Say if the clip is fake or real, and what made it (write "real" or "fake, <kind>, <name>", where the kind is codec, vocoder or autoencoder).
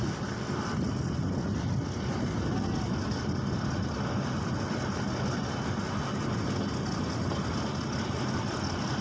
real